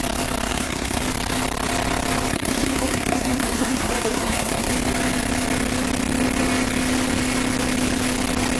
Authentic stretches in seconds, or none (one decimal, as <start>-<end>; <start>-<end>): 0.0-0.5; 1.0-2.3; 4.7-8.6